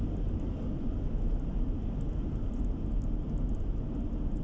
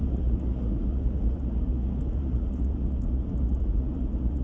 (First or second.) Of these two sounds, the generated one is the second